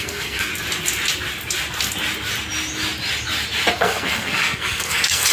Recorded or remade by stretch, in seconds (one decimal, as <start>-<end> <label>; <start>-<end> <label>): 0.0-0.5 remade; 0.5-3.7 recorded; 3.7-5.3 remade